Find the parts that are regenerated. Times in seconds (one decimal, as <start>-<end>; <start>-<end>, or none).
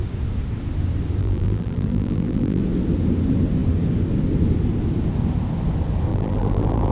1.2-2.6; 6.1-6.9